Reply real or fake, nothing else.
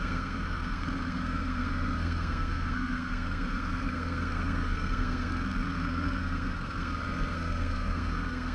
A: fake